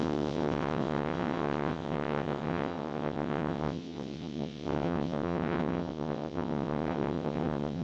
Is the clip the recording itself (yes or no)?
no